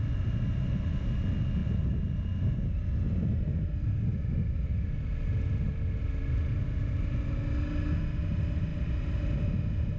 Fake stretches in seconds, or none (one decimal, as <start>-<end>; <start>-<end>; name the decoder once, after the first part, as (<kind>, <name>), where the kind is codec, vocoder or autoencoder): none

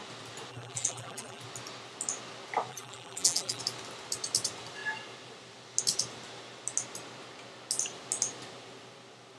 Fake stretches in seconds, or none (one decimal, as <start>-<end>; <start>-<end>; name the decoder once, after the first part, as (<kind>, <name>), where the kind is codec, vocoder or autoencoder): 0.5-1.4 (vocoder, BigVGAN v2); 2.7-3.6

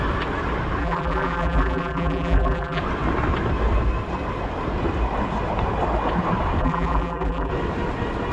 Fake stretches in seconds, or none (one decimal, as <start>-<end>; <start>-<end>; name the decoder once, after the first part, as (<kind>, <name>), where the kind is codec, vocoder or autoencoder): 0.8-2.8 (vocoder, BigVGAN v2); 6.6-7.5

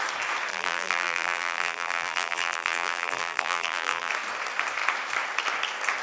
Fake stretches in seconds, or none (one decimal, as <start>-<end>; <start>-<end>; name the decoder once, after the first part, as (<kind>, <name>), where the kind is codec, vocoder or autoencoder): 0.5-4.1 (vocoder, BigVGAN v2)

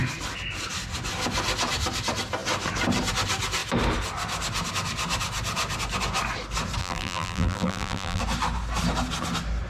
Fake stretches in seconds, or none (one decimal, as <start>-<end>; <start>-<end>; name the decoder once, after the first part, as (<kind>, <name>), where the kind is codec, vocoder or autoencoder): 6.8-8.2 (vocoder, BigVGAN v2)